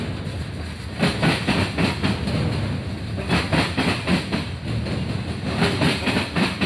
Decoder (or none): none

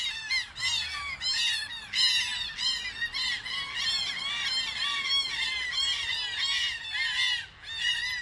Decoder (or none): none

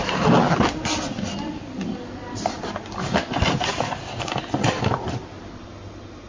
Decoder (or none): none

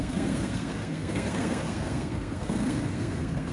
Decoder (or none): codec, SNAC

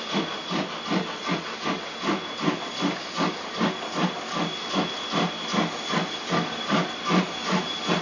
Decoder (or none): none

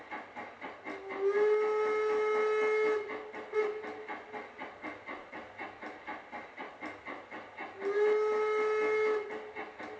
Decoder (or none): none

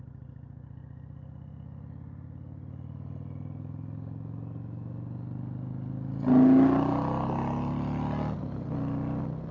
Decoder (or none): none